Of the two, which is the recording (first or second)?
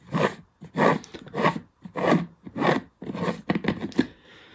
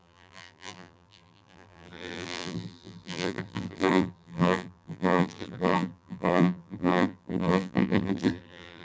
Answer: first